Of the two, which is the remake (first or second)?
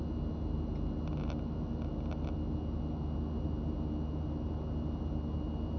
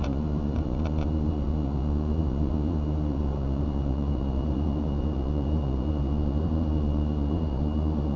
second